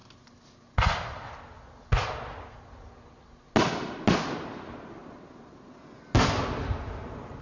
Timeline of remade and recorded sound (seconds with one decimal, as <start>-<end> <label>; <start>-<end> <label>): 0.0-7.4 recorded